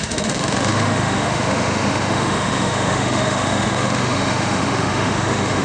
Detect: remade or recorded remade